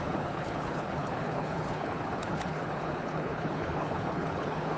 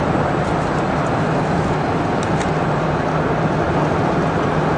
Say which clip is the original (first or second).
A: second